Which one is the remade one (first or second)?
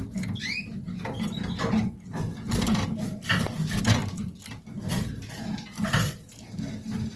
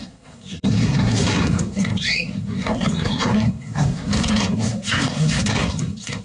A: second